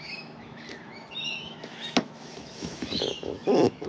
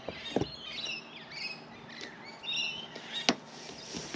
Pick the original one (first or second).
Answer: second